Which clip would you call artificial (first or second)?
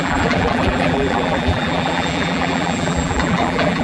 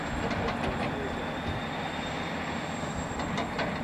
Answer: first